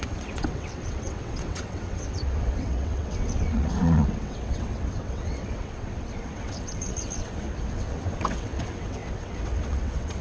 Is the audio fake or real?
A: fake